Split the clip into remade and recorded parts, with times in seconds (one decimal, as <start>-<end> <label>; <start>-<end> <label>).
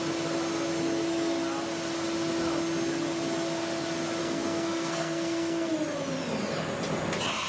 0.0-4.2 recorded; 4.2-5.7 remade; 5.7-7.5 recorded